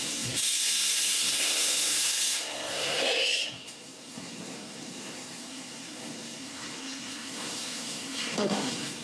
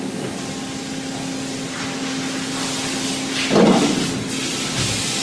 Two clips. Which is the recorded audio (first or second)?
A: second